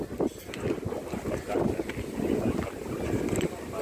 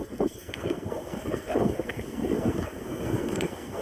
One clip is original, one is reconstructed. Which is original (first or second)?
first